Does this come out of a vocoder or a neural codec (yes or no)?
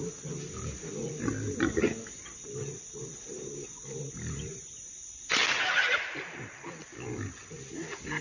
no